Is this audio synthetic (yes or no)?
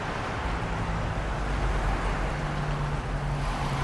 no